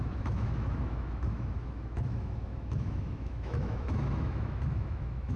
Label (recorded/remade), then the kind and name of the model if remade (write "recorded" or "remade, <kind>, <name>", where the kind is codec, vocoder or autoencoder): remade, autoencoder, DAC-VAE